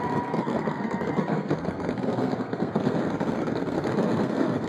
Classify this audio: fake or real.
fake